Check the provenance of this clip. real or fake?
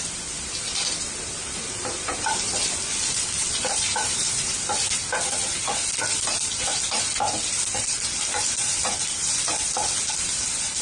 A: fake